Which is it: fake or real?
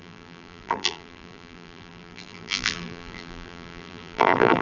fake